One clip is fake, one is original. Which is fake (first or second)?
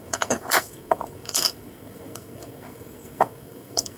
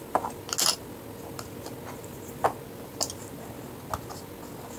first